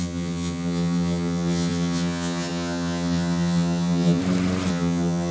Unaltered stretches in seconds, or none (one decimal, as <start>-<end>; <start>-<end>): 4.2-4.7